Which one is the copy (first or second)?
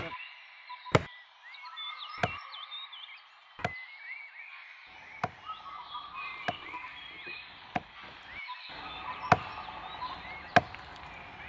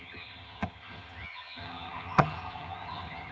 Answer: second